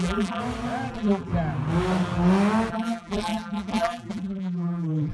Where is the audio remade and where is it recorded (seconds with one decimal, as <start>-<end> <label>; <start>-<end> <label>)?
0.0-0.4 remade; 0.4-0.9 recorded; 0.9-1.3 remade; 1.3-2.7 recorded; 2.7-5.1 remade